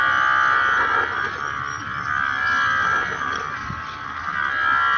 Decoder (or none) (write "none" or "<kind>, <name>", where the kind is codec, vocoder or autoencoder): none